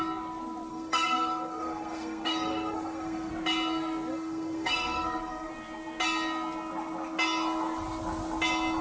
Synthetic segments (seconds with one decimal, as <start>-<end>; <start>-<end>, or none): 0.7-3.3; 4.1-5.5